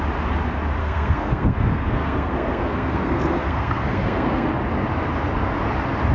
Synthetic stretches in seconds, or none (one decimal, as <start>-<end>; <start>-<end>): 0.8-4.5